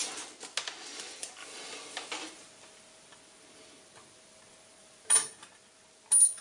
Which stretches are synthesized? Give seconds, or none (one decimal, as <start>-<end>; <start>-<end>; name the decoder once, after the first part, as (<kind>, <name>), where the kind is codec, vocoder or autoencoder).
none